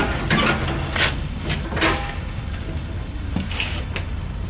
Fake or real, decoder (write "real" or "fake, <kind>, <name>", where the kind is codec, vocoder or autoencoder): real